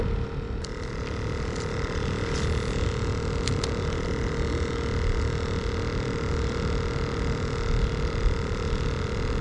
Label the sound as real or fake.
real